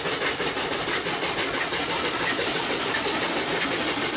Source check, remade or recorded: recorded